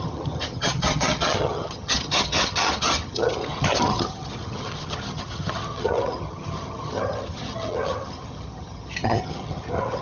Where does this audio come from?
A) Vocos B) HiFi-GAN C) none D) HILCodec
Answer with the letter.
B